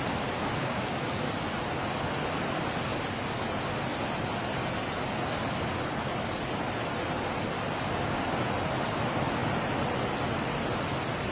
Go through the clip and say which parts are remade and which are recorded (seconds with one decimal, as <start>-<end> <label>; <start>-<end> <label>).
0.0-0.6 recorded; 0.6-1.3 remade; 1.3-11.3 recorded